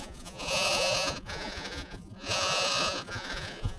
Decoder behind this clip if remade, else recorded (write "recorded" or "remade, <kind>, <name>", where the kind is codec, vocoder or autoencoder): remade, vocoder, Vocos